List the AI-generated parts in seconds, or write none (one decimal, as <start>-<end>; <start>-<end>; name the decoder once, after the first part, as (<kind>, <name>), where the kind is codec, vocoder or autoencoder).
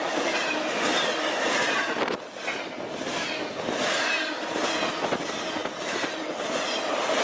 none